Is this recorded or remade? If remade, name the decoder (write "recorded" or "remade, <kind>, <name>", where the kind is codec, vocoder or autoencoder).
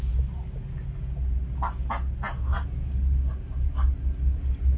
recorded